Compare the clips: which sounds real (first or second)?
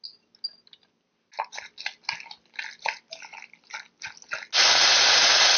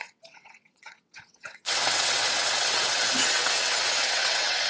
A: first